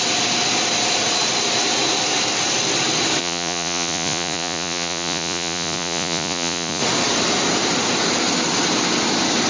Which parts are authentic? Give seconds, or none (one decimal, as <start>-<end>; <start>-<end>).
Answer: 0.0-3.2; 6.8-9.5